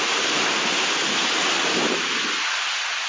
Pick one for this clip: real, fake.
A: real